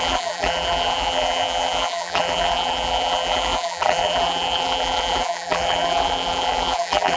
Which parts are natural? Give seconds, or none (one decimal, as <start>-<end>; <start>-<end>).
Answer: none